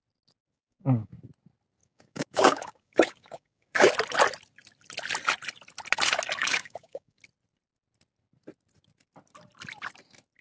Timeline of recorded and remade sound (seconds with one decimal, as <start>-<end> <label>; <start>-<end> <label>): 0.0-0.4 recorded; 0.4-1.1 remade; 1.1-1.8 recorded; 1.8-3.9 remade; 3.9-6.4 recorded; 6.4-7.2 remade; 7.2-10.4 recorded